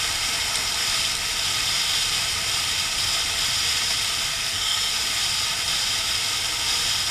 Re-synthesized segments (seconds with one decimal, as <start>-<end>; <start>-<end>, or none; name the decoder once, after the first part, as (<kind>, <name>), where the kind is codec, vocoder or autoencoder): 4.3-4.9 (codec, SNAC)